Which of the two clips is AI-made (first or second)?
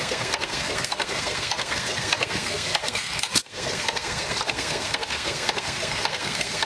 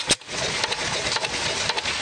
first